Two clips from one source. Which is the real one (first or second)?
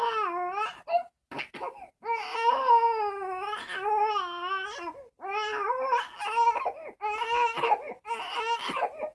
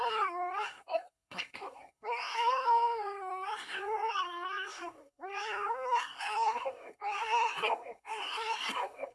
first